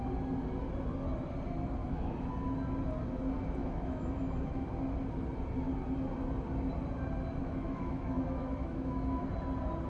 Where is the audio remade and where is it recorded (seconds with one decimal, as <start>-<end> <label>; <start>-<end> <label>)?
0.0-1.8 recorded; 1.8-2.3 remade; 2.3-3.6 recorded; 3.6-4.7 remade; 4.7-7.4 recorded; 7.4-9.2 remade; 9.2-9.9 recorded